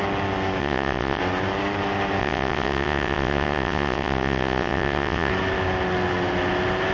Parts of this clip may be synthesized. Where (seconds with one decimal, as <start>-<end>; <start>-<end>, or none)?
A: 0.6-1.2; 2.2-5.3